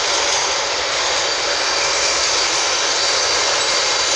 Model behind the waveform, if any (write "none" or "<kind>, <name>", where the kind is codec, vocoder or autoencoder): none